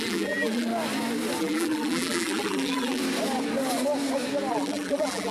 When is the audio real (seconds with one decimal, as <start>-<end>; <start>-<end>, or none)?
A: 0.7-1.4; 3.0-4.5

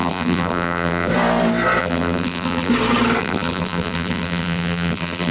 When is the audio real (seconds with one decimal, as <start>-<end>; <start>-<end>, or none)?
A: 1.1-1.8; 2.7-3.2

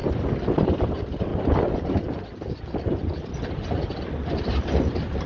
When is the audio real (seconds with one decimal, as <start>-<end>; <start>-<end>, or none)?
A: 0.0-0.6; 1.3-2.7; 3.3-4.6

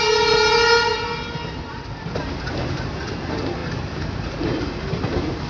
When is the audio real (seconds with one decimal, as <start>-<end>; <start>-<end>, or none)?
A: 0.0-1.7; 2.5-3.6; 4.7-5.5

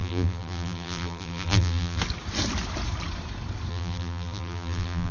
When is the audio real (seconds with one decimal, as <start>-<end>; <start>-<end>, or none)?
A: 2.0-3.7

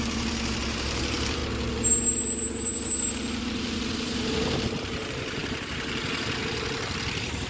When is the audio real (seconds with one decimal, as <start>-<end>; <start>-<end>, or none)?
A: 1.4-3.4

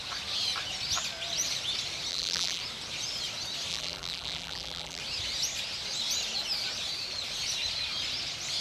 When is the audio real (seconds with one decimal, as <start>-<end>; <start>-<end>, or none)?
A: 0.0-2.1; 2.6-3.7; 5.0-8.6

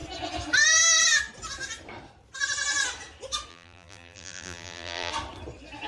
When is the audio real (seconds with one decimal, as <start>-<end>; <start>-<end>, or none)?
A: 0.0-3.5; 5.1-5.9